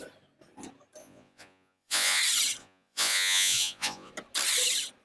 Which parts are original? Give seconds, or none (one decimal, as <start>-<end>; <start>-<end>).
0.0-1.0; 2.2-2.6; 4.1-5.0

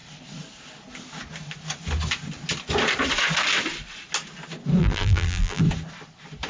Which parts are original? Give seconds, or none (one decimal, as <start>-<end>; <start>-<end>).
0.0-4.8; 5.6-6.5

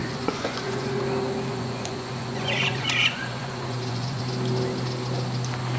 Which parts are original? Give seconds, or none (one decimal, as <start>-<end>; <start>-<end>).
1.0-1.5; 4.2-5.8